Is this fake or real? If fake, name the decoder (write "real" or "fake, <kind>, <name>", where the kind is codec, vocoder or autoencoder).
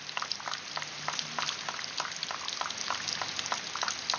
real